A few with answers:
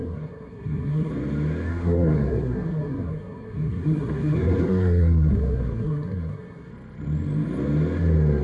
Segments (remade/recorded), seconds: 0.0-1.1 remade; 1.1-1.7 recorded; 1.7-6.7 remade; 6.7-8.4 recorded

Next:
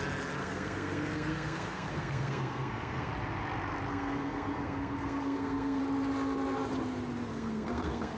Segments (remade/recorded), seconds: 0.0-0.4 recorded; 0.4-3.1 remade; 3.1-3.9 recorded; 3.9-5.8 remade; 5.8-7.3 recorded; 7.3-8.2 remade

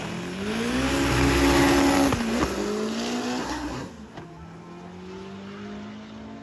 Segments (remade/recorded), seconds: 0.0-3.4 recorded; 3.4-3.9 remade; 3.9-6.4 recorded

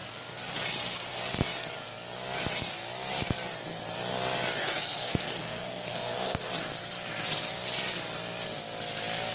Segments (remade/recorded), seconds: 0.0-4.6 recorded; 4.6-6.5 remade; 6.5-9.3 recorded

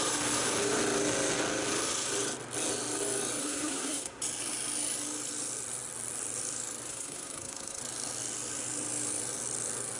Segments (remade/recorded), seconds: 0.0-3.4 recorded; 3.4-4.2 remade; 4.2-6.9 recorded; 6.9-7.8 remade; 7.8-10.0 recorded